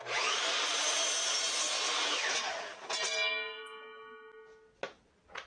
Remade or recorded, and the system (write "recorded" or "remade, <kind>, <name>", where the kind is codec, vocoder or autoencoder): recorded